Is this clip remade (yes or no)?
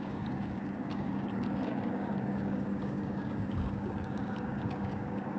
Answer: yes